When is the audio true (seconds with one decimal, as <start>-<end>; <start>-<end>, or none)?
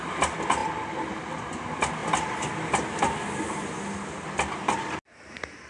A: 0.0-5.7